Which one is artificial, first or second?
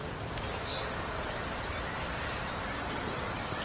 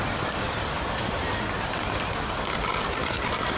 first